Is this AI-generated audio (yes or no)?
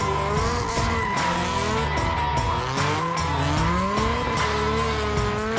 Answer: no